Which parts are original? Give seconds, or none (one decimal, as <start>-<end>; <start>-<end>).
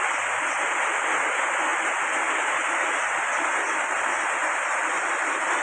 0.0-5.6